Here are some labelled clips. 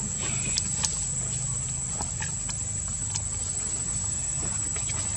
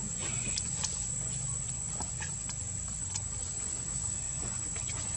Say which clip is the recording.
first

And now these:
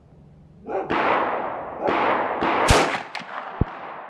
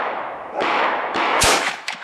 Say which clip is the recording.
first